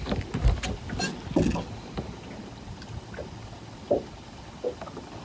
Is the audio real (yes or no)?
yes